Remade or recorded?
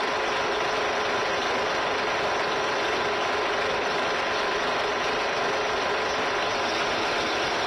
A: recorded